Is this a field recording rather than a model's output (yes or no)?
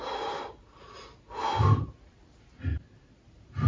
yes